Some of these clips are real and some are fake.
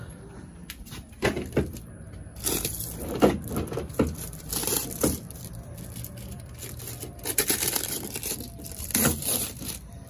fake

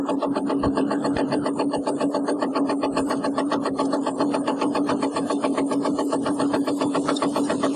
fake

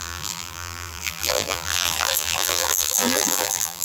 fake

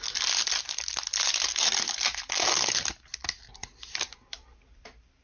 real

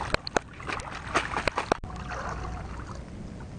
real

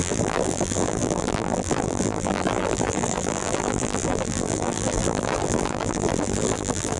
fake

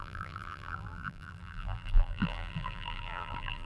fake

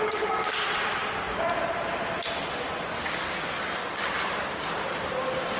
real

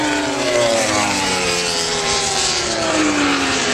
fake